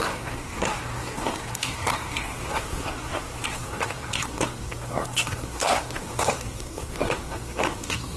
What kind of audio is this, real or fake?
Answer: fake